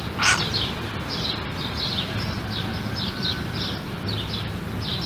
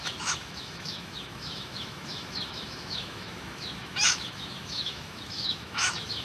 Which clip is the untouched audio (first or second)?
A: first